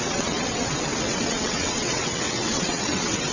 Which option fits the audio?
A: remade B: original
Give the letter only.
A